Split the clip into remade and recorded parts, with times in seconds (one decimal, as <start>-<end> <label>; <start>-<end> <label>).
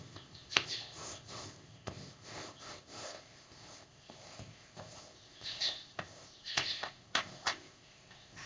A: 0.0-8.5 remade